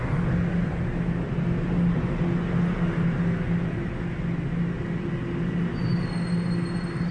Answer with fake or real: real